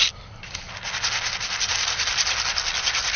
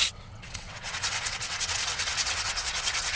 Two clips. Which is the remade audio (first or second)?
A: second